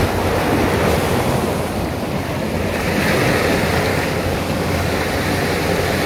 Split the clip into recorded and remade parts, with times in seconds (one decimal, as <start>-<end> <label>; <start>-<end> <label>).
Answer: 0.0-3.9 recorded; 3.9-5.0 remade; 5.0-6.1 recorded